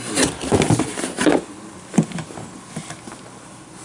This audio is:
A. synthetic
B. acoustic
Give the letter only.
B